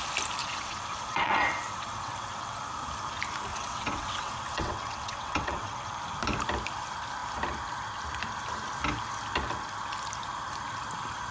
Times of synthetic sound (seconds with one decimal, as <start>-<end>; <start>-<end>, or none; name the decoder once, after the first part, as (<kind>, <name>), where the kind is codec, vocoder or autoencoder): 0.4-2.6 (vocoder, WaveNeXt); 3.5-5.9